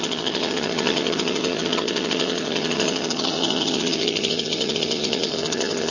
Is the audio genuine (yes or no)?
no